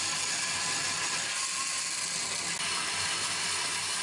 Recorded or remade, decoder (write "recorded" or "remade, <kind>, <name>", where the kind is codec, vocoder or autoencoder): recorded